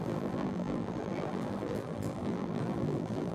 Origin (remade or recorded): remade